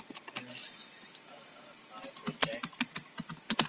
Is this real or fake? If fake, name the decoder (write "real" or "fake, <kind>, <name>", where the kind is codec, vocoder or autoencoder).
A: real